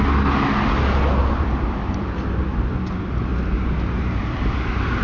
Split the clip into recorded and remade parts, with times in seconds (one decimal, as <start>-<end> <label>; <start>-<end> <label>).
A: 0.0-1.5 recorded; 1.5-2.7 remade; 2.7-5.0 recorded